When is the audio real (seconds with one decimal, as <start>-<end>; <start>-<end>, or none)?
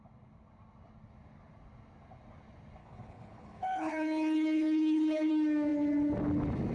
0.0-2.8; 5.3-6.7